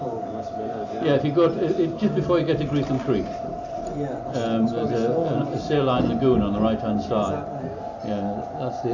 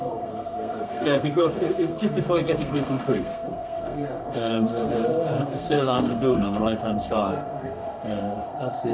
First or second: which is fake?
second